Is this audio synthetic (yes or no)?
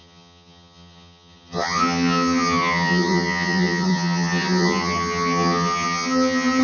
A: yes